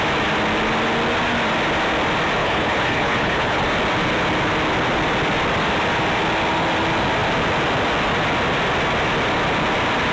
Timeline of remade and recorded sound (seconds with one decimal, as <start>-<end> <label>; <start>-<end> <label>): 0.0-2.4 recorded; 2.4-3.6 remade; 3.6-10.1 recorded